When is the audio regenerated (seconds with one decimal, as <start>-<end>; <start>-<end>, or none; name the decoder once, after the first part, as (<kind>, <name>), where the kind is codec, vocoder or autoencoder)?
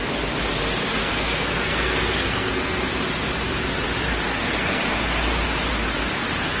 1.0-2.9 (codec, SNAC); 4.3-4.8